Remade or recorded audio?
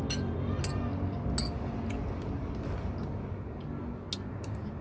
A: recorded